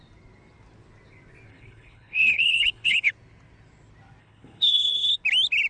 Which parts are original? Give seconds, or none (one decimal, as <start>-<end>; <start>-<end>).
0.0-1.5; 3.1-4.2; 5.2-5.7